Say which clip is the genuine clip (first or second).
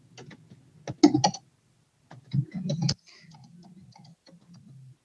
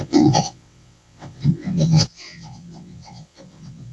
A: first